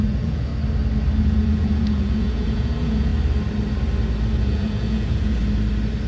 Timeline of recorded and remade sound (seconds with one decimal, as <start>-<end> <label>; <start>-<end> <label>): 0.0-0.5 remade; 0.5-1.2 recorded; 1.2-3.1 remade; 3.1-4.4 recorded; 4.4-5.4 remade; 5.4-6.1 recorded